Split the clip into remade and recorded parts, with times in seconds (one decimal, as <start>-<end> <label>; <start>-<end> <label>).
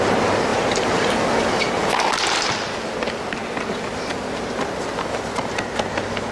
0.0-6.3 recorded